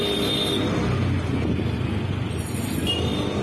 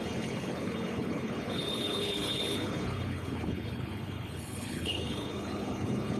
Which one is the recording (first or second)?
first